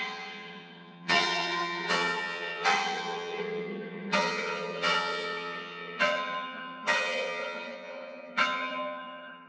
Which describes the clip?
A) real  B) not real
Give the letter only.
B